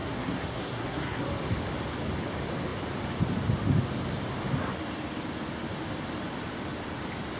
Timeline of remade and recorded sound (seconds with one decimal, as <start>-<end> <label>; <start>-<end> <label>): 0.0-1.2 remade; 1.2-7.4 recorded

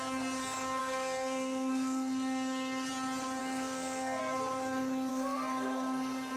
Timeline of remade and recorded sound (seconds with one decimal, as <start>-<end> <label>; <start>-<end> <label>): 0.0-0.8 recorded; 0.8-2.9 remade; 2.9-3.4 recorded; 3.4-4.2 remade; 4.2-5.1 recorded; 5.1-6.4 remade

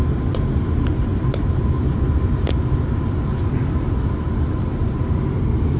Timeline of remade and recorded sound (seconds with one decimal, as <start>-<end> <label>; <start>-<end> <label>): 0.0-5.8 recorded

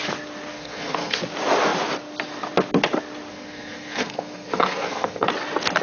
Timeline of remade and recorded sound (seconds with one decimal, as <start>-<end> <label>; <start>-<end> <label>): 0.0-0.5 recorded; 0.5-1.2 remade; 1.2-3.3 recorded; 3.3-5.3 remade; 5.3-5.8 recorded

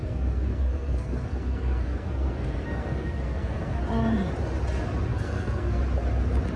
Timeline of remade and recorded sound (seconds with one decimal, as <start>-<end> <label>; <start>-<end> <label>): 0.0-3.8 remade; 3.8-5.1 recorded; 5.1-5.8 remade; 5.8-6.6 recorded